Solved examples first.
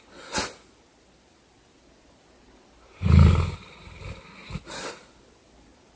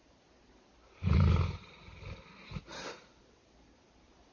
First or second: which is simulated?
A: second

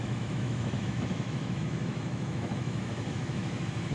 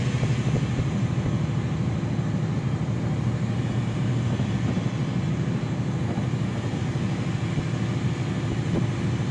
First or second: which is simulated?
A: first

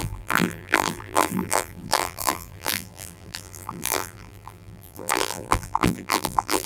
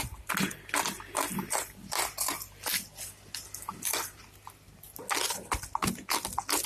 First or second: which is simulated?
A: first